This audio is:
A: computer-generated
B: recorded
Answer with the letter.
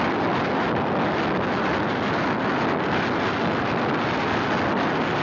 B